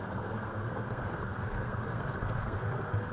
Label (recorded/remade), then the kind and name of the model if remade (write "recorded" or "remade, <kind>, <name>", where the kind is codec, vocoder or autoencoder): remade, codec, SNAC